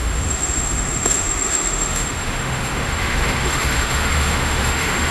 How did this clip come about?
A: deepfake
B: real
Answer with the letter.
A